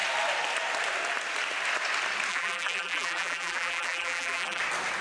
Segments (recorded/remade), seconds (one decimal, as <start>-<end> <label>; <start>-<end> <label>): 0.0-2.3 recorded; 2.3-4.6 remade; 4.6-5.0 recorded